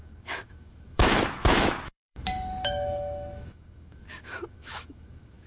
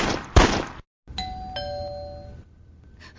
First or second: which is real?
second